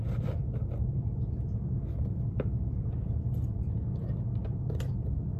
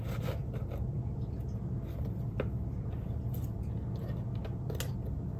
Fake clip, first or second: first